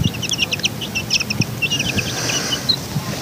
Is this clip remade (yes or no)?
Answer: no